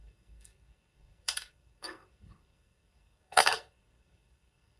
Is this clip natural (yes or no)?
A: no